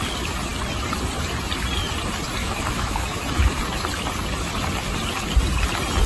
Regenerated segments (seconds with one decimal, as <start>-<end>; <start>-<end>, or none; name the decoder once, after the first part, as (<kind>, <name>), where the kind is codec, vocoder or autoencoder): 2.4-3.6 (autoencoder, DAC-VAE)